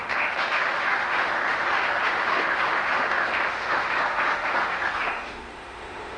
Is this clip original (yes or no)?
no